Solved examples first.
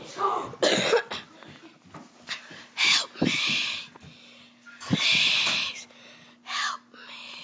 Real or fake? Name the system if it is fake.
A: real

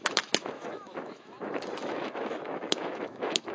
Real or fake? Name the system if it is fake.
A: fake, autoencoder, DAC-VAE